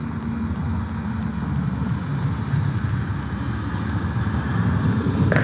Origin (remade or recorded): recorded